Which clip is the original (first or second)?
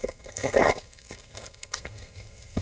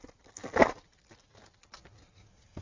second